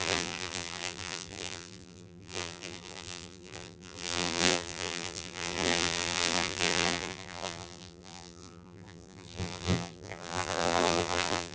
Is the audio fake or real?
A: fake